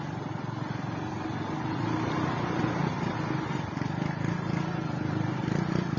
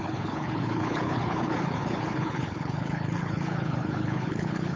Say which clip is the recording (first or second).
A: first